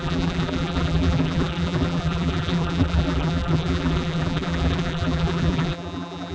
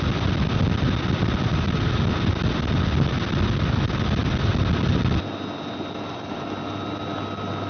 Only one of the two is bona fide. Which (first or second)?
second